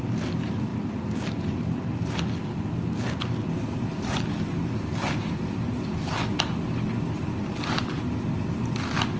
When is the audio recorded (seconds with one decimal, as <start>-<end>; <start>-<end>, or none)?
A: 0.0-9.2